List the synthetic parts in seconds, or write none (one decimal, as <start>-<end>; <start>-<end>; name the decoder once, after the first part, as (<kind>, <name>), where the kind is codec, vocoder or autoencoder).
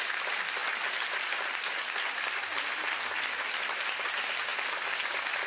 none